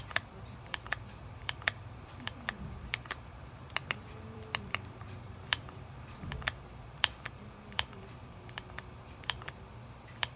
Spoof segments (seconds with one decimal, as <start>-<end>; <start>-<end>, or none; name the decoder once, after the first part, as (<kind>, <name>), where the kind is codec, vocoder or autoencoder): 0.0-10.4 (vocoder, BigVGAN v2)